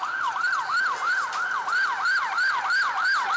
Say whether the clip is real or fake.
real